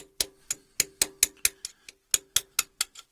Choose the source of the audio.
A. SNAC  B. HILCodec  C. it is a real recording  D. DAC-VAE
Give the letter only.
C